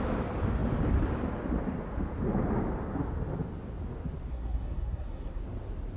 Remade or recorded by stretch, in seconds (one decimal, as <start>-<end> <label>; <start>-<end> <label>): 0.0-4.3 recorded; 4.3-5.4 remade; 5.4-6.0 recorded